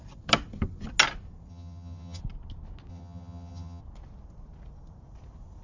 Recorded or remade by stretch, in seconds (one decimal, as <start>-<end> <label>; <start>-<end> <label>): 0.0-1.5 recorded; 1.5-2.2 remade; 2.2-2.9 recorded; 2.9-3.8 remade; 3.8-5.6 recorded

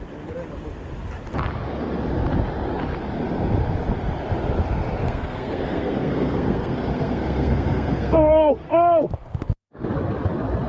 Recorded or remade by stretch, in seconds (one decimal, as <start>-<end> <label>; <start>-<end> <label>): 0.0-5.0 recorded; 5.0-9.9 remade; 9.9-10.7 recorded

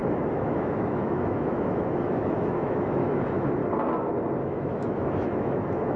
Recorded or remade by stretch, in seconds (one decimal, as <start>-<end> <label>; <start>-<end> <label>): 0.0-3.6 remade; 3.6-4.4 recorded; 4.4-6.0 remade

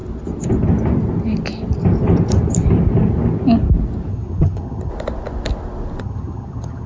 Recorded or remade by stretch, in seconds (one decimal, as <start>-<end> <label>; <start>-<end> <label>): 0.0-4.1 recorded; 4.1-4.9 remade; 4.9-6.0 recorded; 6.0-6.9 remade

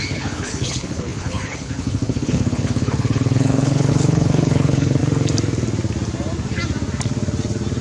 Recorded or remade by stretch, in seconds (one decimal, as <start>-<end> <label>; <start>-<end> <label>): 0.0-5.0 remade; 5.0-7.8 recorded